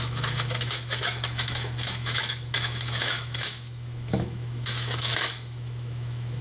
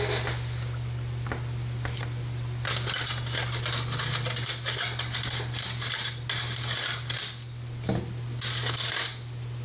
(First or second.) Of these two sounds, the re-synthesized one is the first